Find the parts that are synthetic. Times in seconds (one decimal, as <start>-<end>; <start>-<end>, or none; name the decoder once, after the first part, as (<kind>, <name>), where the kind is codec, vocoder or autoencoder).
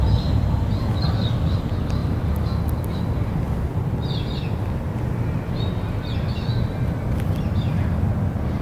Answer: 2.0-2.6 (vocoder, BigVGAN v2)